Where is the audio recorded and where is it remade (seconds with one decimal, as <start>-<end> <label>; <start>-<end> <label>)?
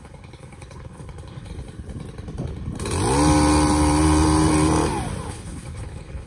0.0-1.5 remade; 1.5-5.3 recorded; 5.3-6.3 remade